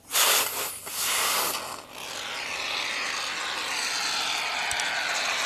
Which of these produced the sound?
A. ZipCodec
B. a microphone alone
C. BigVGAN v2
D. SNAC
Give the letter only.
B